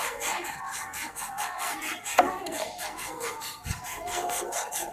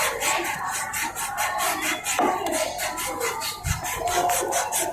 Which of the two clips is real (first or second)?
second